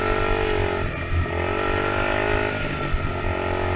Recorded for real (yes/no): yes